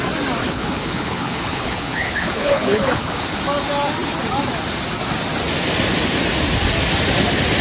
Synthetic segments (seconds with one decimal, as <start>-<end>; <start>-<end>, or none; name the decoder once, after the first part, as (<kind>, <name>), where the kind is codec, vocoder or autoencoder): 0.4-3.4 (codec, HILCodec)